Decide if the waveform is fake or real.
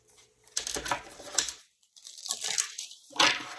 real